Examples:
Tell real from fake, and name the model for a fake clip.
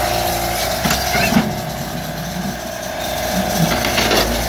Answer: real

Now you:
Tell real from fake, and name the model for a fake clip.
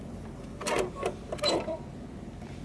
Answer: fake, vocoder, BigVGAN v2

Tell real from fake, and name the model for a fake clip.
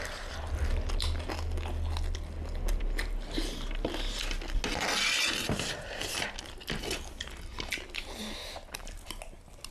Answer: real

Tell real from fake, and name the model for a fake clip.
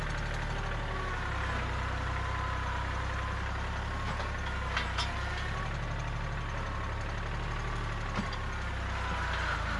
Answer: real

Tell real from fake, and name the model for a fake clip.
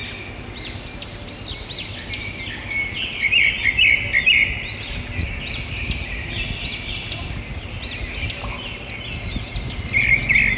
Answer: real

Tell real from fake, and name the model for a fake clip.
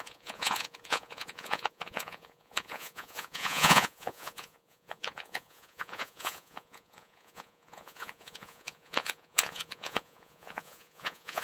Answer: fake, vocoder, Vocos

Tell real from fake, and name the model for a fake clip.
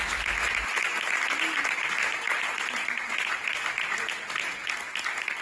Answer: real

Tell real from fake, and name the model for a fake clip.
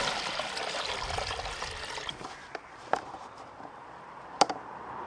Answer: real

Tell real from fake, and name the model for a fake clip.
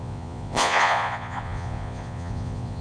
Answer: fake, vocoder, Vocos